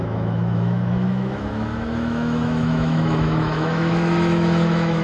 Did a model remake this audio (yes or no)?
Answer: yes